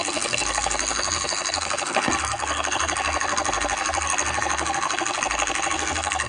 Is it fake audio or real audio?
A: fake